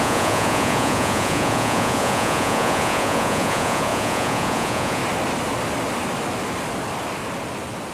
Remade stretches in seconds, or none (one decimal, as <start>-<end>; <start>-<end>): 0.0-5.0